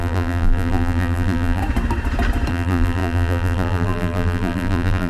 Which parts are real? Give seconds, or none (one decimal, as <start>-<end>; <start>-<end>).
1.6-2.5